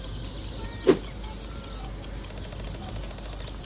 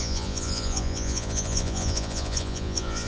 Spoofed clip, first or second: second